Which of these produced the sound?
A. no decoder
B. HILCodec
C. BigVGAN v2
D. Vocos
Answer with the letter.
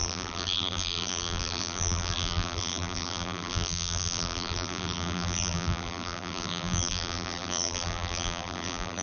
C